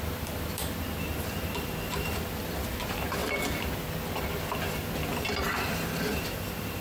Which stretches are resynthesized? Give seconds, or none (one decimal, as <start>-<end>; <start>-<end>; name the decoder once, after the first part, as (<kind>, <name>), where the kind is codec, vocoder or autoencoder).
0.0-3.2 (vocoder, BigVGAN v2); 5.4-6.8